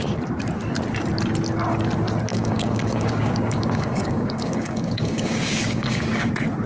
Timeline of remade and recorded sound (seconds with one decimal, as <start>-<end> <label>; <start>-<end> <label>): 0.0-2.3 recorded; 2.3-6.3 remade; 6.3-6.7 recorded